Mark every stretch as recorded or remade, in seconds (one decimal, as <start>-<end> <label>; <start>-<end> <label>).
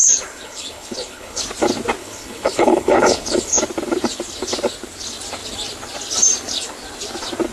0.0-1.4 remade; 1.4-2.0 recorded; 2.0-3.6 remade; 3.6-7.5 recorded